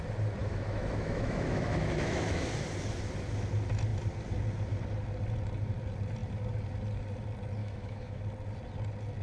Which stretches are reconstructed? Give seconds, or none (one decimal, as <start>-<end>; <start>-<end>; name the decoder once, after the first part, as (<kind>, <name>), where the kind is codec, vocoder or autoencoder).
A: 0.4-2.5 (autoencoder, DAC-VAE); 7.6-8.2